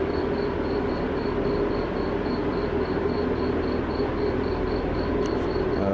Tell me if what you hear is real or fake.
real